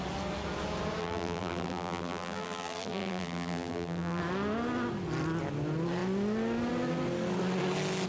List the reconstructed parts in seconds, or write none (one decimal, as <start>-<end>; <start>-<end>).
1.0-4.2